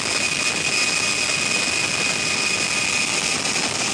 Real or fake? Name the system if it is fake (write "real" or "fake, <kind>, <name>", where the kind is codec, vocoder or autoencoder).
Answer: real